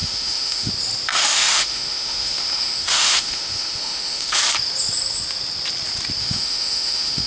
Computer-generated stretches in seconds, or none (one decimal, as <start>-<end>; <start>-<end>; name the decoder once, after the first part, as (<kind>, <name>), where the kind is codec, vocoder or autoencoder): 0.0-0.7 (autoencoder, DAC-VAE); 1.1-4.4; 6.2-7.3

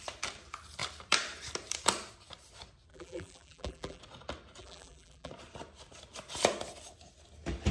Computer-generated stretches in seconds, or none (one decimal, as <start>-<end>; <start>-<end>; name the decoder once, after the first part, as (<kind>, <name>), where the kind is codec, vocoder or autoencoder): 2.9-4.0 (vocoder, BigVGAN v2); 4.6-5.3

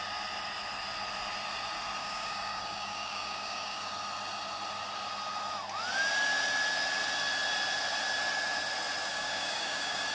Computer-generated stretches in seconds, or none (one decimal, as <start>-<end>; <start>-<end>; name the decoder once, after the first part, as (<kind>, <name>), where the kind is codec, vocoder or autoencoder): 2.0-3.9 (codec, DAC); 9.1-10.1

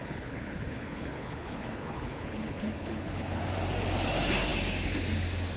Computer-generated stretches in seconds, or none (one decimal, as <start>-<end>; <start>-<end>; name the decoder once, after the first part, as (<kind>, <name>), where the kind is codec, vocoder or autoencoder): 0.0-3.4 (codec, HILCodec)

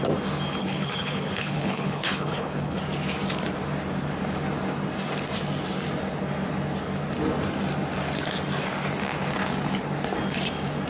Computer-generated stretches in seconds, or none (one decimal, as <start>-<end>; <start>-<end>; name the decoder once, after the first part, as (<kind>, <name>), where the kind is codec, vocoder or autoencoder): 0.6-2.8 (codec, HILCodec)

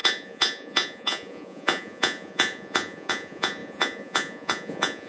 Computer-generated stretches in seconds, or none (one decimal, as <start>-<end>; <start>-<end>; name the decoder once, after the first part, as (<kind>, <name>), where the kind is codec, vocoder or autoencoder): 0.0-5.1 (vocoder, Vocos)